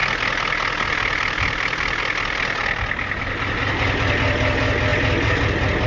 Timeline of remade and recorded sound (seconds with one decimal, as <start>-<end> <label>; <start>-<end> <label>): 0.0-5.9 recorded